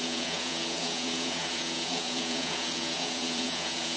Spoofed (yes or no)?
yes